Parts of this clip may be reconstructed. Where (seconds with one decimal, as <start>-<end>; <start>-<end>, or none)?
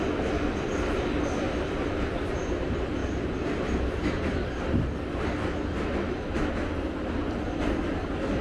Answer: none